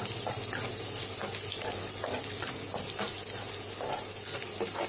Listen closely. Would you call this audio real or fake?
real